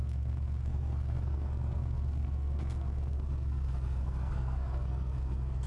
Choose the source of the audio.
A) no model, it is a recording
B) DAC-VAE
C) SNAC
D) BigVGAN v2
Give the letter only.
C